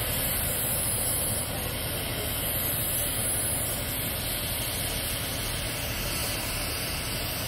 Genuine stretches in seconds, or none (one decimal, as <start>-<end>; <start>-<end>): 0.7-6.2; 7.0-7.5